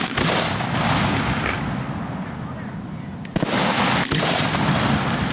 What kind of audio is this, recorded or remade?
recorded